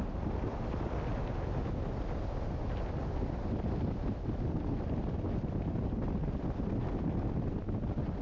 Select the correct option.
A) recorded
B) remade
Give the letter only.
A